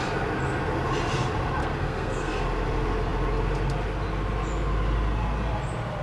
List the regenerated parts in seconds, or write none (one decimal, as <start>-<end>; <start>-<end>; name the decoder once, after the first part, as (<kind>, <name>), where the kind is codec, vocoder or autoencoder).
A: 1.6-2.4 (codec, SNAC)